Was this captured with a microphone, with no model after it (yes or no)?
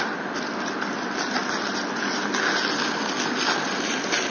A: yes